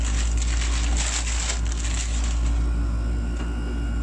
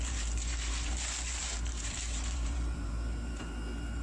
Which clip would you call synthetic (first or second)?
second